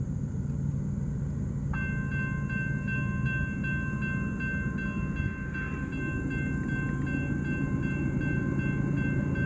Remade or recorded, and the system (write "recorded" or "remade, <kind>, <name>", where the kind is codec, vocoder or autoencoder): recorded